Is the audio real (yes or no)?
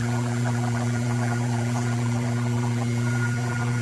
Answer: no